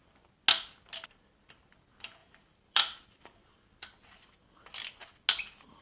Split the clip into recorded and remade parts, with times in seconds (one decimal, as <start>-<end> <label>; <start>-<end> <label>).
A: 0.0-2.2 recorded; 2.2-3.6 remade; 3.6-5.8 recorded

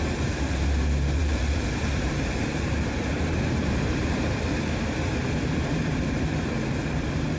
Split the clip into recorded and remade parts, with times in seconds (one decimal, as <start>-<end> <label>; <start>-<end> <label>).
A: 0.0-1.2 recorded; 1.2-4.3 remade; 4.3-7.4 recorded

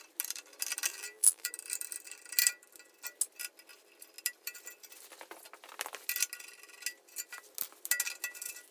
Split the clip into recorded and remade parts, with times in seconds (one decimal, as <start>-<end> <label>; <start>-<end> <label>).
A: 0.0-0.9 recorded; 0.9-1.5 remade; 1.5-8.7 recorded

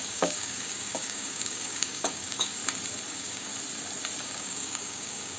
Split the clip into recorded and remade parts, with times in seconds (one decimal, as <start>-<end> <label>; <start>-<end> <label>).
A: 0.0-2.6 remade; 2.6-3.1 recorded; 3.1-3.5 remade; 3.5-4.2 recorded; 4.2-5.4 remade

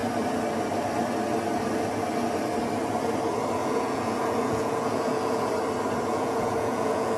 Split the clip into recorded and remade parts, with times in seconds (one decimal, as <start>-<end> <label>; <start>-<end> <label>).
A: 0.0-3.6 recorded; 3.6-5.5 remade; 5.5-6.1 recorded; 6.1-7.2 remade

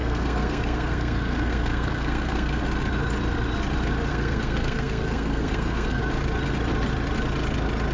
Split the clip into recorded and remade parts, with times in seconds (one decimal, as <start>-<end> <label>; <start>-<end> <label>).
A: 0.0-2.6 remade; 2.6-4.1 recorded; 4.1-6.0 remade; 6.0-7.9 recorded